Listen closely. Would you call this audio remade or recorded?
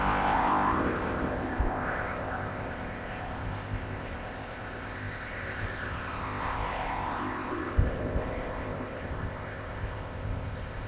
remade